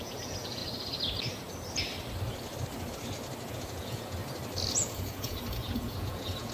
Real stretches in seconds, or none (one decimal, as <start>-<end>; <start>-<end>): 0.6-3.5; 4.2-4.7

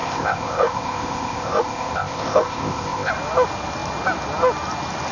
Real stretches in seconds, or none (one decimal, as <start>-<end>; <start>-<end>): 3.1-5.1